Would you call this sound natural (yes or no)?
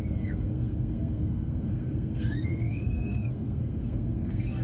no